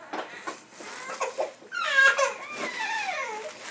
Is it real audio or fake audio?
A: real